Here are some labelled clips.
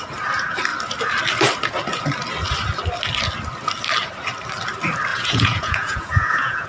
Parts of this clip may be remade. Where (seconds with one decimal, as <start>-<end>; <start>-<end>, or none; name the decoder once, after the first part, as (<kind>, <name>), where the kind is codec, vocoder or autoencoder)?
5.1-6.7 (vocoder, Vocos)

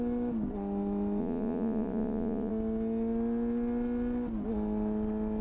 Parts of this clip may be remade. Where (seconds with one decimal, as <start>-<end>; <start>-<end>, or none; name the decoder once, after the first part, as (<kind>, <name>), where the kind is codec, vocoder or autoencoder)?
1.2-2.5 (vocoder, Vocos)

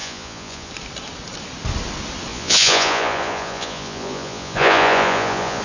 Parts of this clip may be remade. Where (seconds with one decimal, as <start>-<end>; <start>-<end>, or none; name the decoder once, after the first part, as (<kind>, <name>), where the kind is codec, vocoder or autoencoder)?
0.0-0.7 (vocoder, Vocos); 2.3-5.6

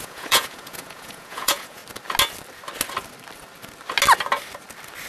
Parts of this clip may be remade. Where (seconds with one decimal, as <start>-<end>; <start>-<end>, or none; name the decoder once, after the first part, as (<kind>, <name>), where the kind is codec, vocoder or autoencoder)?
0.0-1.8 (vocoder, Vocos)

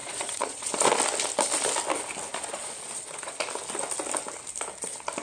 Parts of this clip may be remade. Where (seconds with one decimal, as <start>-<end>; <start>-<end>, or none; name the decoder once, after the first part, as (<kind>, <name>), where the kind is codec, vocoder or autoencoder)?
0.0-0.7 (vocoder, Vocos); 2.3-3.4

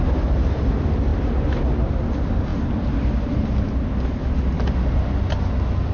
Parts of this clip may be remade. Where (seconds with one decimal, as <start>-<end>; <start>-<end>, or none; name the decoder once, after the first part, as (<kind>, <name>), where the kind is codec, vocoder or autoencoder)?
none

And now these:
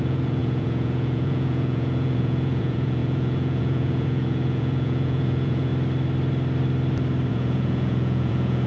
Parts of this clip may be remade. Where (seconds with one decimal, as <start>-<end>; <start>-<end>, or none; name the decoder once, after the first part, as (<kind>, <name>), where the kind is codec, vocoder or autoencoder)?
0.0-5.7 (vocoder, Vocos); 7.3-8.7

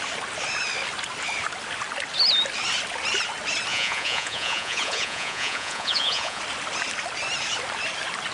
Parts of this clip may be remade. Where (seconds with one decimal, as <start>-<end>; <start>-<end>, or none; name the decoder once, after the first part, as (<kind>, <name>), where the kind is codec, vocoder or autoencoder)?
3.7-6.4 (vocoder, Vocos)